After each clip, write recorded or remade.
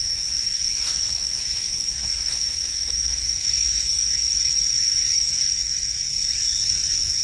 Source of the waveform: remade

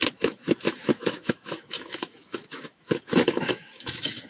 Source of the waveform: remade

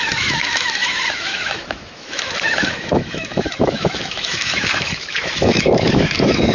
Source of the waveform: remade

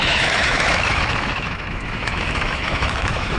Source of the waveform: remade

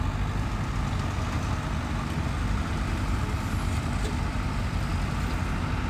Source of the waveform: recorded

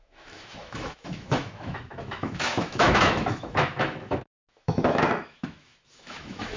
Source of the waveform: remade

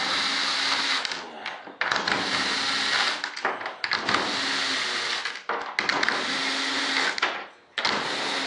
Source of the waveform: recorded